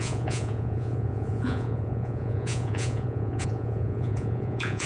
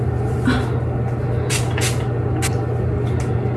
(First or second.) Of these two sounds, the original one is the second